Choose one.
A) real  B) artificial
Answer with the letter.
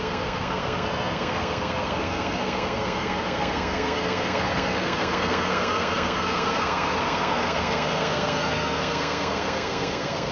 B